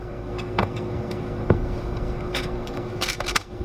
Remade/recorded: remade